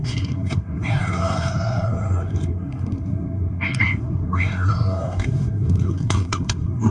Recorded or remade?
remade